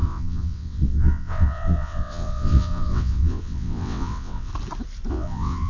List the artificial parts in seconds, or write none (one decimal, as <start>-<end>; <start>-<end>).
0.0-4.5; 5.1-5.7